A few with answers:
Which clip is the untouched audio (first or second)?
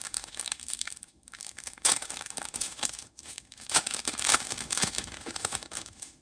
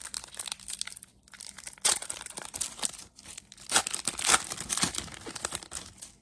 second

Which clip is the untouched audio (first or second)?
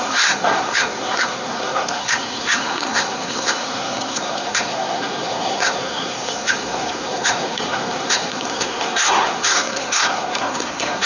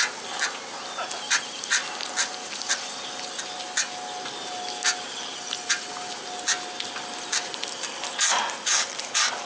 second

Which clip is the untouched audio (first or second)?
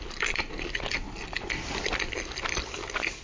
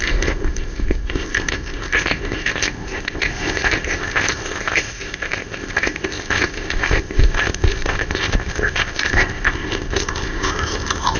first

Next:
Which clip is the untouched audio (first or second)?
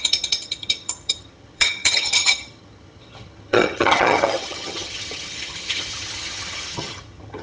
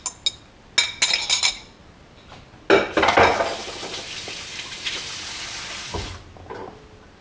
second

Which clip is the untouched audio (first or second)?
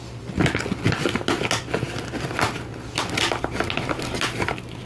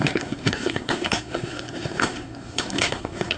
first